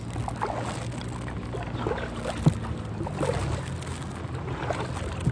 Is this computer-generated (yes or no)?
no